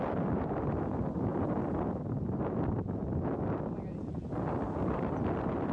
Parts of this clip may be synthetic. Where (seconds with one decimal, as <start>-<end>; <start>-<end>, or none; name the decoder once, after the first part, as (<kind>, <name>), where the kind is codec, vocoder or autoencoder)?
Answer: none